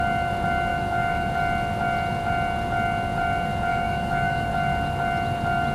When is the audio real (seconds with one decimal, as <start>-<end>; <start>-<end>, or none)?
0.0-0.7; 1.3-3.7; 4.5-5.7